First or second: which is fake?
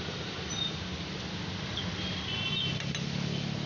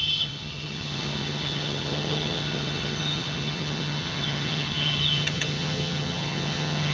second